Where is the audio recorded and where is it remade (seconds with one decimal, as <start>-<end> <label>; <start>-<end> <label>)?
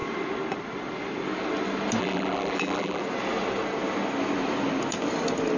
0.0-2.0 recorded; 2.0-3.0 remade; 3.0-5.6 recorded